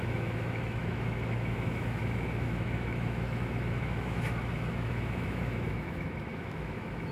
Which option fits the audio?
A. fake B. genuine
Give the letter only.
A